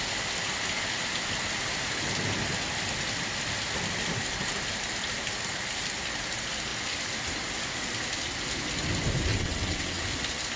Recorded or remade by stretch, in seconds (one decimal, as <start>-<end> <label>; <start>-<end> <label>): 0.0-9.3 recorded; 9.3-10.0 remade; 10.0-10.6 recorded